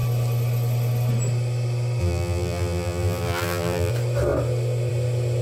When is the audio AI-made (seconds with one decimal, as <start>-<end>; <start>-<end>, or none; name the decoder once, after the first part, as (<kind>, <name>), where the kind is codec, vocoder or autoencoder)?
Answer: 2.0-3.9 (vocoder, BigVGAN v2)